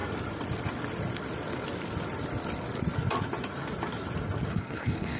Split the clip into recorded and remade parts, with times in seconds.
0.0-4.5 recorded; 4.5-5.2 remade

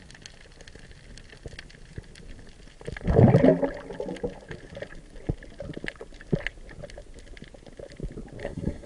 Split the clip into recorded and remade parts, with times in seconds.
0.0-8.4 recorded; 8.4-8.9 remade

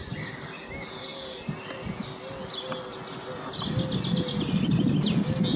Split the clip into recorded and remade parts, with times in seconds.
0.0-5.6 recorded

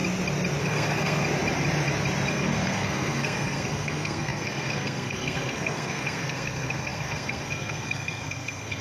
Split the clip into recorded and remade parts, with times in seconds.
0.0-0.6 recorded; 0.6-1.2 remade; 1.2-2.3 recorded; 2.3-8.8 remade

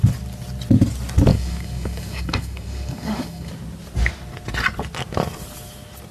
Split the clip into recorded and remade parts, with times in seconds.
0.0-1.3 recorded; 1.3-3.5 remade; 3.5-6.1 recorded

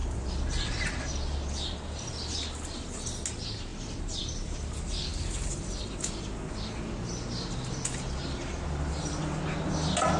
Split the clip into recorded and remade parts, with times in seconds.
0.0-10.2 recorded